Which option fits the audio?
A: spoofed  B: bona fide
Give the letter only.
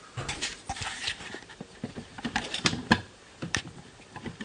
A